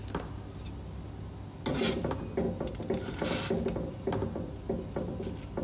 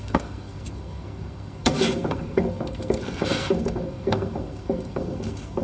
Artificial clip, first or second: second